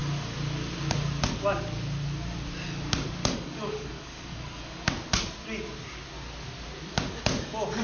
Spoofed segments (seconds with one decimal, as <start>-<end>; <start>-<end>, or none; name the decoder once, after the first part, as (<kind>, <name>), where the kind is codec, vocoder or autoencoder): 3.2-4.9 (codec, DAC)